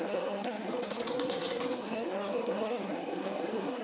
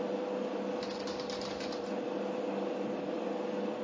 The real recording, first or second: second